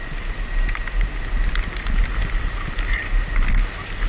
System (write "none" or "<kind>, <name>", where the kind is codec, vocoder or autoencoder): none